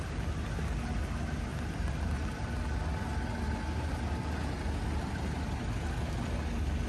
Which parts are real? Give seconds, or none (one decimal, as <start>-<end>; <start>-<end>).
0.0-6.9